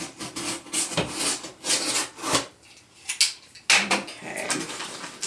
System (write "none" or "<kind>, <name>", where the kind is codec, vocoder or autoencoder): none